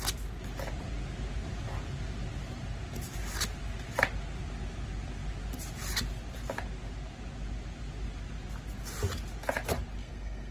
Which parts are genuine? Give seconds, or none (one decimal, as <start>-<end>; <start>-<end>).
0.0-10.0